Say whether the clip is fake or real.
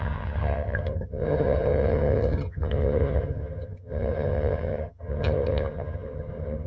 fake